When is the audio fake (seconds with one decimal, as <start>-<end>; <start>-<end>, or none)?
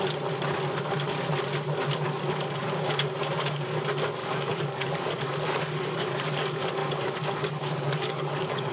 4.2-6.1; 6.8-8.7